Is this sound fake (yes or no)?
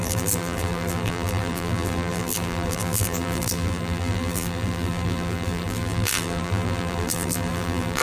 yes